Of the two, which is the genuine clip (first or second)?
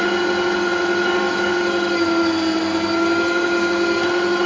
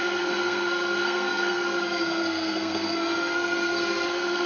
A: first